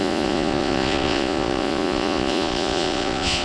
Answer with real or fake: fake